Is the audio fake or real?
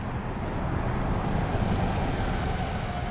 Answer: real